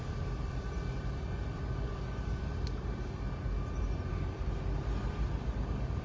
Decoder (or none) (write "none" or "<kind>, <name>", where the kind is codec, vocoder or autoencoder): vocoder, BigVGAN v2